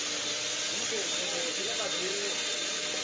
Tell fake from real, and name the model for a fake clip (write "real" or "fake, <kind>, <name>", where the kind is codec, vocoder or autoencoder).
real